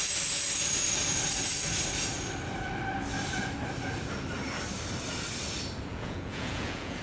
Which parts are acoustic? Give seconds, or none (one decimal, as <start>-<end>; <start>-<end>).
0.0-5.9